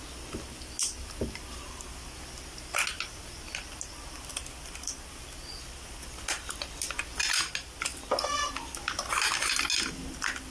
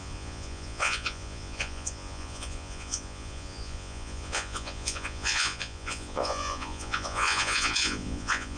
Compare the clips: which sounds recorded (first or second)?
first